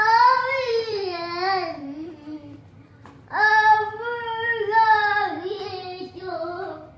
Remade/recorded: remade